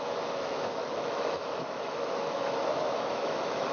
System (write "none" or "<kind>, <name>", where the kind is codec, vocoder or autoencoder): autoencoder, DAC-VAE